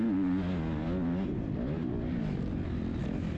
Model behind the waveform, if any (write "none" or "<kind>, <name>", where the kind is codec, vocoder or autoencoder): none